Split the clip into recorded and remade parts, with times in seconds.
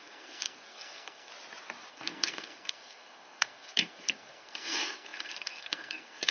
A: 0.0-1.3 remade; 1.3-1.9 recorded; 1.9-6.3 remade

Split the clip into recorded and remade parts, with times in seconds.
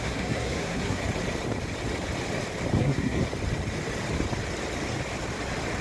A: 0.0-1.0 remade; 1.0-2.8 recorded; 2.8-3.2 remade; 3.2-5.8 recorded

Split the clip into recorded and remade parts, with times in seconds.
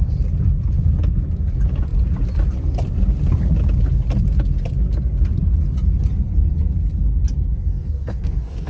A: 0.0-7.7 recorded; 7.7-8.7 remade